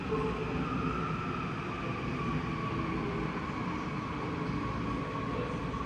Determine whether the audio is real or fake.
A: real